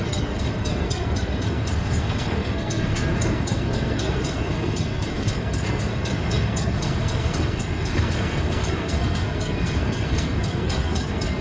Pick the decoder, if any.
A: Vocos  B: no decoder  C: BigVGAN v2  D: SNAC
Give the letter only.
D